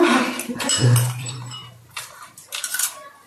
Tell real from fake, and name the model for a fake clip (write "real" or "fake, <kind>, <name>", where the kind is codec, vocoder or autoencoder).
fake, vocoder, BigVGAN v2